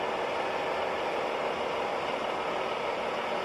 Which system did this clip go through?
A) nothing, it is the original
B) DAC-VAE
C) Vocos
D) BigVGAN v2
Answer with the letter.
A